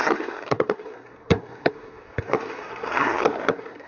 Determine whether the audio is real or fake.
fake